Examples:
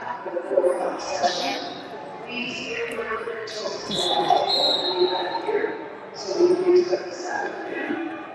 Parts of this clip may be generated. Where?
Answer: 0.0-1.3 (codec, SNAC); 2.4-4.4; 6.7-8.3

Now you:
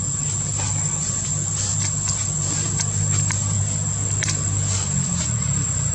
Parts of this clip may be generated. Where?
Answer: none

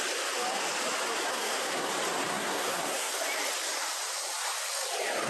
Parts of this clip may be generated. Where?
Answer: 1.3-1.9 (codec, SNAC); 2.3-3.1

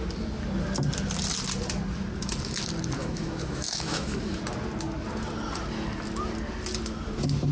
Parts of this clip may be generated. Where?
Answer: 3.0-4.4 (autoencoder, DAC-VAE)

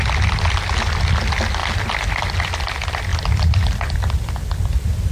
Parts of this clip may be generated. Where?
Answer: none

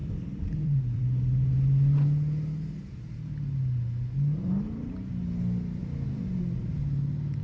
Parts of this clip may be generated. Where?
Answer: 0.0-1.0 (vocoder, BigVGAN v2); 5.8-6.4

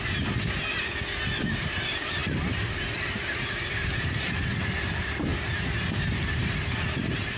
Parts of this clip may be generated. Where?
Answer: 0.0-0.9 (vocoder, BigVGAN v2); 1.5-5.3; 6.1-7.4